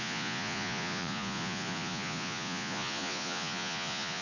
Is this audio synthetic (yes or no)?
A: yes